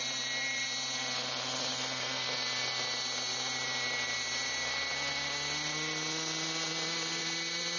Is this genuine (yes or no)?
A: yes